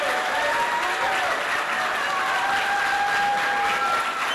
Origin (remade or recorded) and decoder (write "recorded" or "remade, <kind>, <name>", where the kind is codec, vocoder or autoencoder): recorded